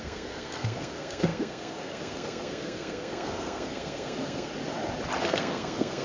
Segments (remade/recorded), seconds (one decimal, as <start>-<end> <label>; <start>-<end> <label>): 0.0-4.5 remade; 4.5-5.2 recorded; 5.2-6.0 remade